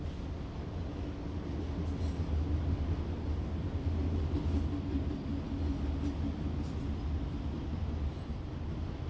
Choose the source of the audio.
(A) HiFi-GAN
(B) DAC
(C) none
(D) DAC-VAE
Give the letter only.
C